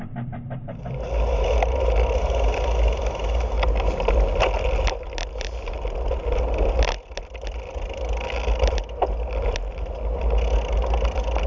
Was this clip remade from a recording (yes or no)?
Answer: no